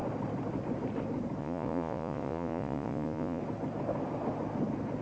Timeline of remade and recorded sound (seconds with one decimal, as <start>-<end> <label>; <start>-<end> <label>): 0.0-1.4 recorded; 1.4-3.4 remade; 3.4-5.0 recorded